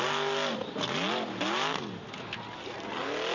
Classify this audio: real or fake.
real